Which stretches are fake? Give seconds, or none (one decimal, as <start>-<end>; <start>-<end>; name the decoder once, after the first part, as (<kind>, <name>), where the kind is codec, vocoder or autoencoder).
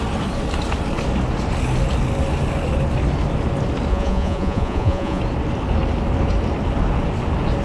3.9-5.2 (vocoder, Vocos)